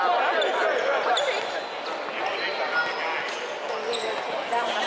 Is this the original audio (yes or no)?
yes